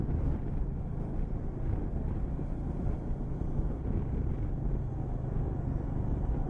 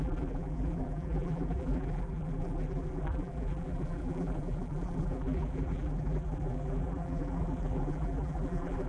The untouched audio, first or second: first